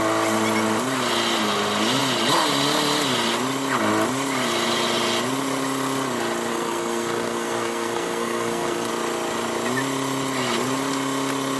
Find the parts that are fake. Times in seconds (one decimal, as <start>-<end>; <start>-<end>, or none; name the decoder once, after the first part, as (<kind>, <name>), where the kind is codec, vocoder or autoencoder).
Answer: 6.5-8.9 (codec, SNAC)